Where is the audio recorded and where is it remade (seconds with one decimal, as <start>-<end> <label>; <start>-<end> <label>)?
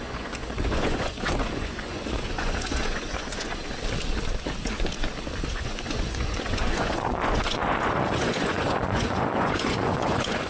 0.0-3.6 remade; 3.6-5.5 recorded; 5.5-10.5 remade